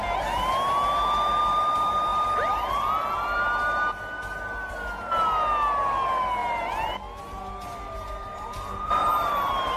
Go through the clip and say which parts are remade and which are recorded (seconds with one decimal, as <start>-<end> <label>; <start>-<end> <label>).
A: 0.0-2.1 recorded; 2.1-2.9 remade; 2.9-9.0 recorded; 9.0-9.8 remade